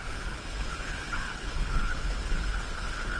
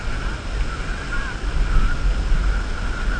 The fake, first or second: first